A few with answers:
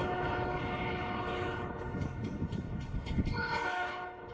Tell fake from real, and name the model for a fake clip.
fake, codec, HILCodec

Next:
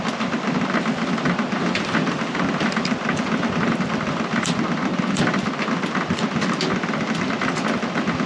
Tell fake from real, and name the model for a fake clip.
fake, vocoder, BigVGAN v2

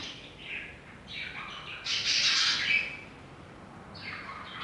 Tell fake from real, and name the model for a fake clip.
real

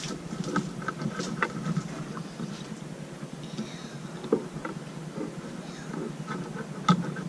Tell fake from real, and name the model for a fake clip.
real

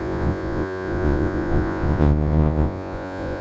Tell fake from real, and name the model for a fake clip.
fake, vocoder, Vocos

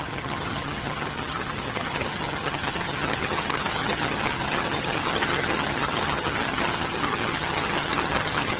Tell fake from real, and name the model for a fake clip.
fake, vocoder, HiFi-GAN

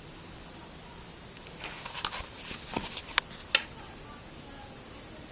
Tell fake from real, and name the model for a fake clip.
real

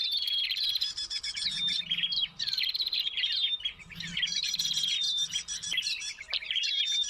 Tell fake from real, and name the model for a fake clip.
fake, vocoder, BigVGAN v2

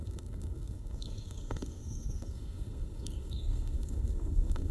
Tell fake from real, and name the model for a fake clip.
fake, codec, SNAC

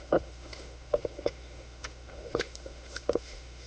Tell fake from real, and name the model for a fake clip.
fake, autoencoder, DAC-VAE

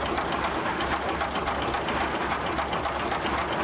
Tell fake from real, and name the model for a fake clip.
real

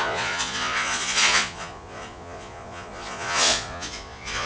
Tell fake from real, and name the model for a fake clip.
fake, vocoder, Vocos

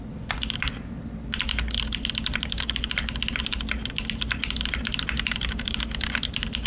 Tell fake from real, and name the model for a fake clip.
real